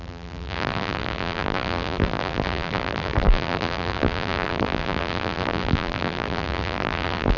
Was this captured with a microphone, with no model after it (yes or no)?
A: no